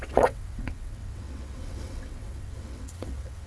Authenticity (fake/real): fake